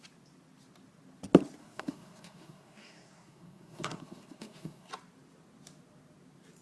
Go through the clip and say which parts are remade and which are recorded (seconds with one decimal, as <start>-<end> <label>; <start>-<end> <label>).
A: 0.0-1.6 recorded; 1.6-4.9 remade; 4.9-6.6 recorded